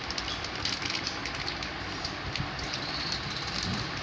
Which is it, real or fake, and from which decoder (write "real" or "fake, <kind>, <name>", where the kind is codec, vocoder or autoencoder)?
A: real